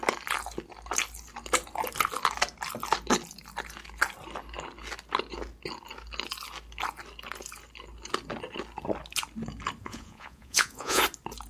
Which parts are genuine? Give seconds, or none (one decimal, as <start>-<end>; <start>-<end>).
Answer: 0.0-9.8; 11.0-11.5